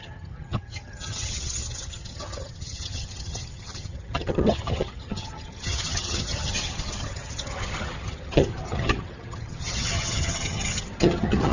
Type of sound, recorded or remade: remade